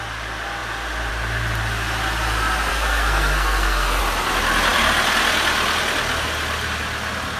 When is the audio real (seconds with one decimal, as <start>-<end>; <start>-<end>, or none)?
0.0-2.7; 4.0-7.4